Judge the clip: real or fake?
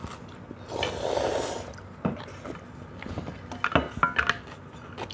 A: real